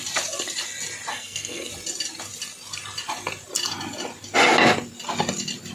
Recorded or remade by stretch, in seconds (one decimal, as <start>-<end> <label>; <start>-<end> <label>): 0.0-1.1 recorded; 1.1-1.7 remade; 1.7-5.7 recorded